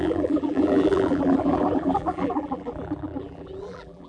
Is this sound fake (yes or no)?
yes